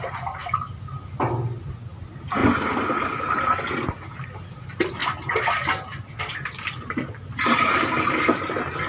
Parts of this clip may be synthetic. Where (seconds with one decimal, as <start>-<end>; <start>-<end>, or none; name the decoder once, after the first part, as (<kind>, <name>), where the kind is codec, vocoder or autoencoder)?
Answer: 2.4-3.2 (vocoder, BigVGAN v2)